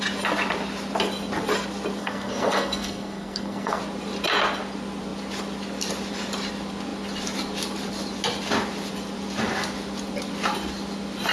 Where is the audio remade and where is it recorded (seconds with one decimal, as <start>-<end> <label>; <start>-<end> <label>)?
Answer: 0.0-2.0 recorded; 2.0-3.8 remade; 3.8-11.3 recorded